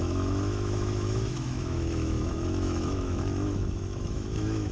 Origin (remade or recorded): remade